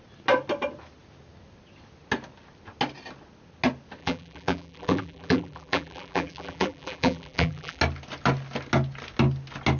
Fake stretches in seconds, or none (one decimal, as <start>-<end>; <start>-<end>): 4.0-7.8

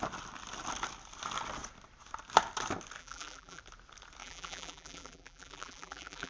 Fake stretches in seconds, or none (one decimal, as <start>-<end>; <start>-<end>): 3.0-3.6; 4.2-6.3

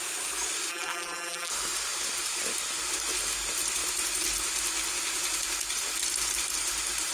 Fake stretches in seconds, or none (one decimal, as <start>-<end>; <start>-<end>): 0.7-1.5

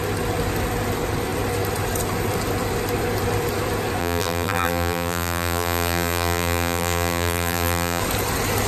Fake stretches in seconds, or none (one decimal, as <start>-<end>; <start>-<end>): 4.0-8.0

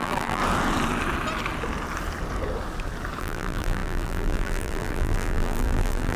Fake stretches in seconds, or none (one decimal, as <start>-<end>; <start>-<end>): 0.0-0.4; 3.2-6.2

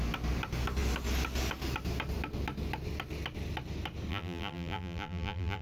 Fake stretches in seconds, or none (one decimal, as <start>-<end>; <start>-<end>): 4.1-5.6

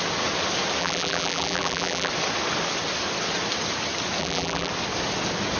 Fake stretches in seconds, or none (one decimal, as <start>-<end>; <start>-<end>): 0.8-2.1; 4.2-4.7

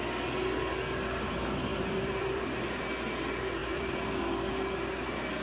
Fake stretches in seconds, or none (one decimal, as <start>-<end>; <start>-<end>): 1.7-2.8; 3.6-4.5